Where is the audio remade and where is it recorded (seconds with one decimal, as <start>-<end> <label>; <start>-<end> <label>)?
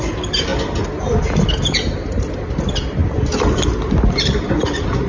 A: 0.0-5.1 recorded